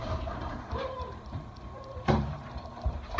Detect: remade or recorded remade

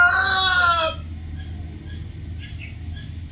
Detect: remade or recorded recorded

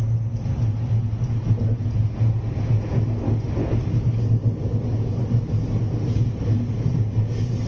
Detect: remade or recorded recorded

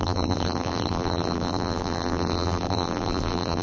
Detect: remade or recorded remade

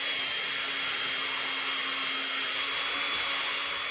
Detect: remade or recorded recorded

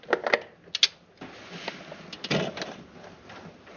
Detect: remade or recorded recorded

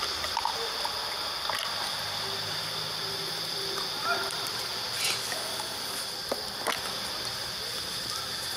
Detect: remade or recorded recorded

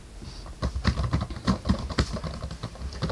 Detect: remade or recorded recorded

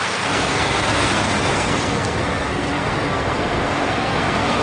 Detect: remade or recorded remade